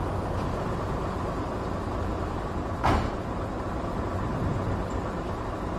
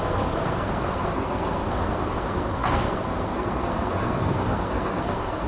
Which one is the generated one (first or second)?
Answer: second